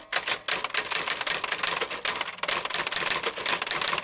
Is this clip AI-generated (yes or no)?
no